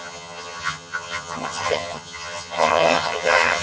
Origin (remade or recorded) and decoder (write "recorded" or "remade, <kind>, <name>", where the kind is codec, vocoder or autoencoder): remade, vocoder, HiFi-GAN